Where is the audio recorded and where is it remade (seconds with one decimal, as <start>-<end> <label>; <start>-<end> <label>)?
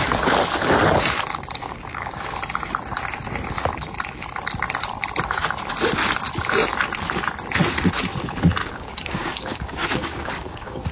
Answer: 0.0-1.6 recorded; 1.6-2.1 remade; 2.1-8.6 recorded; 8.6-10.9 remade